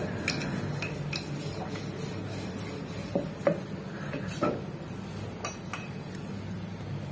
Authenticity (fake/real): real